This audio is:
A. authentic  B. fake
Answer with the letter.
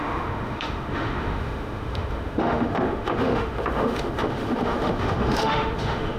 B